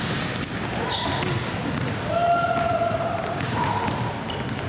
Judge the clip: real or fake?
real